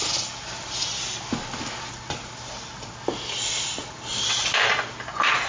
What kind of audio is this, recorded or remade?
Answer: recorded